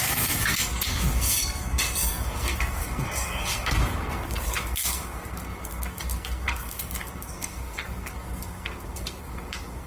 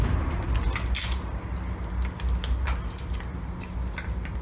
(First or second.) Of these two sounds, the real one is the second